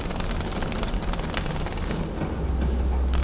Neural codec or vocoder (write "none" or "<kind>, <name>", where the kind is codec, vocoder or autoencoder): none